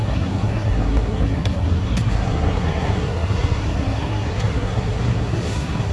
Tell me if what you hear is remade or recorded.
remade